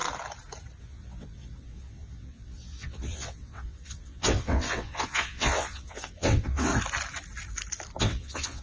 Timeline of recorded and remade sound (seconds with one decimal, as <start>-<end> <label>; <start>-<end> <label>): 0.0-0.8 recorded; 0.8-6.7 remade; 6.7-8.0 recorded; 8.0-8.6 remade